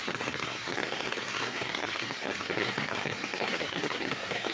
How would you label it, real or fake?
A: fake